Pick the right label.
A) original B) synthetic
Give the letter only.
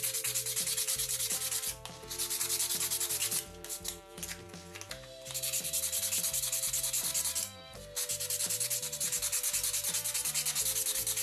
A